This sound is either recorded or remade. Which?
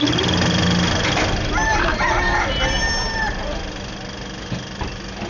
recorded